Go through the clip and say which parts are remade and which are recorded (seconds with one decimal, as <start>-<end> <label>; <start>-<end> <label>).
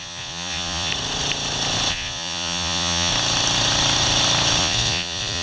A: 0.0-0.9 remade; 0.9-1.9 recorded; 1.9-3.1 remade; 3.1-4.6 recorded; 4.6-5.4 remade